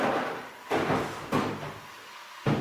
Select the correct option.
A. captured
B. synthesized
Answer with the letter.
A